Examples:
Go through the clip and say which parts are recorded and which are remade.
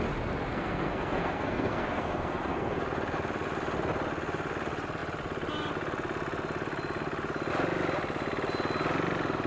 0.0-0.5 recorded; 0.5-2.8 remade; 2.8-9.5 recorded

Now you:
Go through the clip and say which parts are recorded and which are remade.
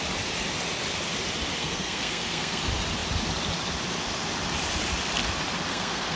0.0-1.6 recorded; 1.6-2.6 remade; 2.6-5.7 recorded; 5.7-6.2 remade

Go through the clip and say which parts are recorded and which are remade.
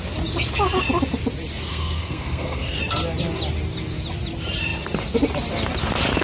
0.0-1.7 recorded; 1.7-2.8 remade; 2.8-6.2 recorded